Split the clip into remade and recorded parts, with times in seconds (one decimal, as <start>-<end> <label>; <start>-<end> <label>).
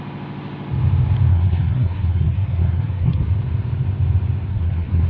0.0-1.3 recorded; 1.3-3.3 remade; 3.3-4.5 recorded; 4.5-5.1 remade